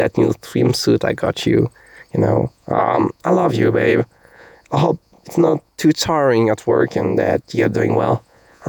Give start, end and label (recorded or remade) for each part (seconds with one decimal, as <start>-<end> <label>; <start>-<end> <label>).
0.0-0.7 remade; 0.7-2.1 recorded; 2.1-5.7 remade; 5.7-6.7 recorded; 6.7-8.7 remade